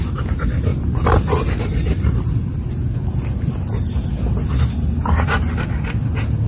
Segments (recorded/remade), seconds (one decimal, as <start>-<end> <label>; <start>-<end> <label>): 0.0-6.5 recorded